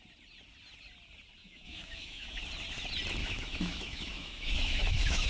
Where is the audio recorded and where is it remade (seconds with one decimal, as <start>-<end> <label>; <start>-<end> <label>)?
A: 0.0-1.4 recorded; 1.4-2.4 remade; 2.4-3.2 recorded; 3.2-5.3 remade